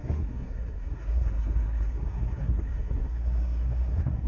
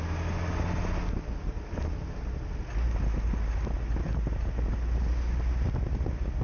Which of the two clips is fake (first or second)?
first